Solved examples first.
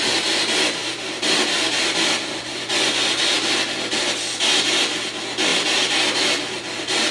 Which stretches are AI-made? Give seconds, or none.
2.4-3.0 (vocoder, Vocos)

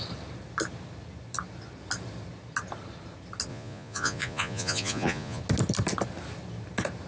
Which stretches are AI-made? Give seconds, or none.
3.5-5.4 (vocoder, Vocos)

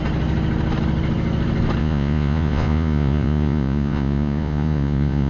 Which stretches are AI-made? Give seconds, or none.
1.8-5.3 (vocoder, Vocos)